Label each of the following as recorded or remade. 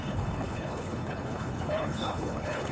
remade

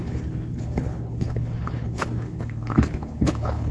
remade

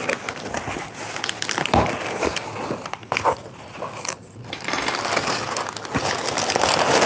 recorded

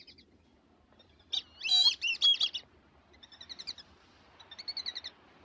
recorded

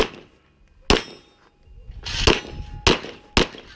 recorded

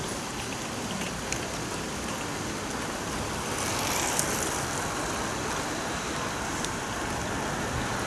recorded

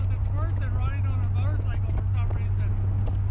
recorded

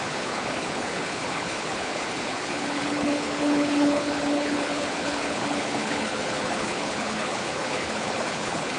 remade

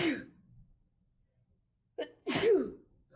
recorded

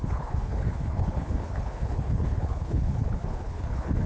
remade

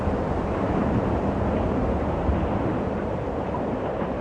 recorded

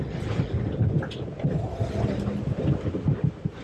recorded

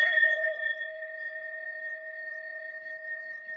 remade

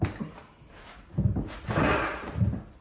recorded